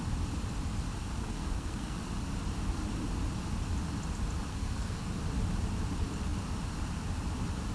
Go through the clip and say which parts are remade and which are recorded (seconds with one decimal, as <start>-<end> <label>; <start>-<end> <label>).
0.0-1.2 recorded; 1.2-2.0 remade; 2.0-4.5 recorded; 4.5-5.0 remade; 5.0-7.7 recorded